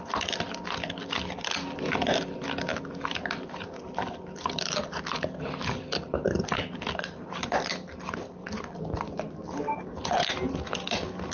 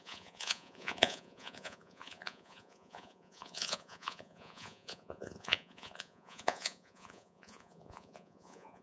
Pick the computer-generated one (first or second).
second